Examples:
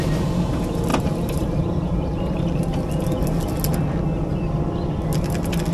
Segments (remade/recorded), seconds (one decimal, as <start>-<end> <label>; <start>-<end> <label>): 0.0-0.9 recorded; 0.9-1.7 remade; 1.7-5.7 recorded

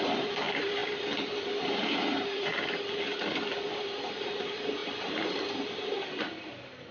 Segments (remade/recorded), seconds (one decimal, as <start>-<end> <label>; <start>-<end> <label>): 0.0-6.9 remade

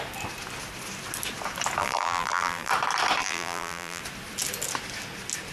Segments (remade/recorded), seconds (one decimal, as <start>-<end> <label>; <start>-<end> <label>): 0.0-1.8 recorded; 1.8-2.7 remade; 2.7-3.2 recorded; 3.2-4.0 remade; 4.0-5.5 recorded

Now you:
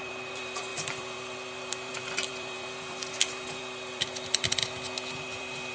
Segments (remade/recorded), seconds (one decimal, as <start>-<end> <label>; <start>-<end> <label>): 0.0-4.6 remade; 4.6-5.1 recorded; 5.1-5.7 remade